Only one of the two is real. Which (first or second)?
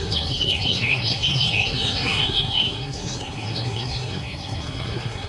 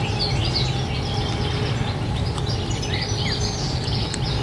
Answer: second